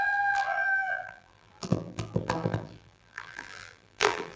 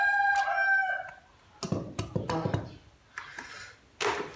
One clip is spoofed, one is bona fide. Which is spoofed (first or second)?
first